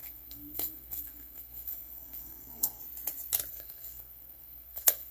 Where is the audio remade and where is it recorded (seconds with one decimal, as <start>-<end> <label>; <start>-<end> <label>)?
0.0-2.8 remade; 2.8-3.5 recorded; 3.5-5.1 remade